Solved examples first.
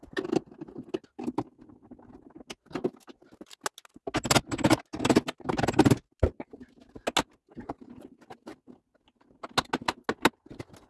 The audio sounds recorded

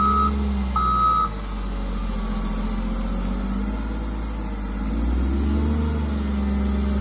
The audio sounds recorded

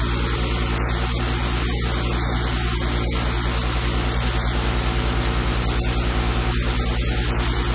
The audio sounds recorded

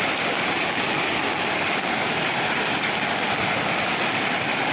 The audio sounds recorded